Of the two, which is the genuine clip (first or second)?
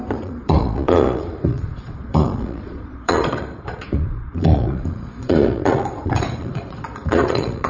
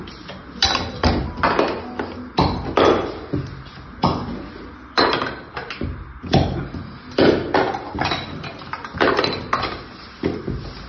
second